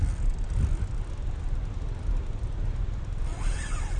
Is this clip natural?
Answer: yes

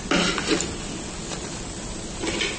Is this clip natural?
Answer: yes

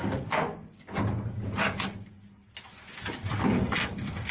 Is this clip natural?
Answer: yes